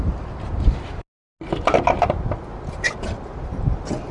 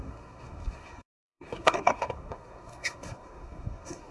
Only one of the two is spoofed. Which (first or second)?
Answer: second